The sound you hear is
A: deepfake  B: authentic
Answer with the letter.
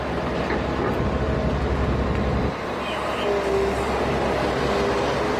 B